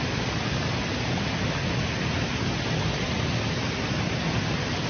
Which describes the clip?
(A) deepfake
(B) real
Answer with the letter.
B